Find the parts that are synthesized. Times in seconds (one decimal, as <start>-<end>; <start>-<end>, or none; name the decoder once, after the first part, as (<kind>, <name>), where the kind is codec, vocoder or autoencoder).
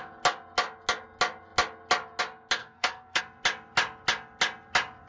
2.6-3.2 (codec, SNAC)